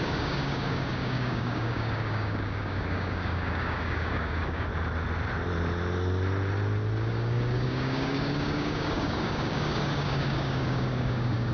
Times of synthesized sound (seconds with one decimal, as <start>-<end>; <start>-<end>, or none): 0.0-4.7; 7.1-11.5